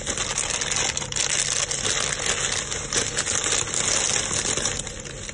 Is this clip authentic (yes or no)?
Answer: yes